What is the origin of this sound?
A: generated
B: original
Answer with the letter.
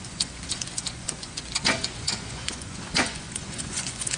A